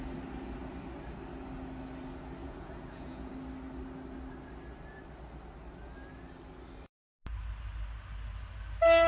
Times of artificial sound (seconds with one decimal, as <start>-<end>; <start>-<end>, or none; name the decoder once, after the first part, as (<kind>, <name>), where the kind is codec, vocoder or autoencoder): 2.4-3.3 (vocoder, Vocos)